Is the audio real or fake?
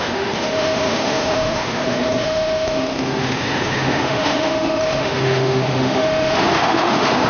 fake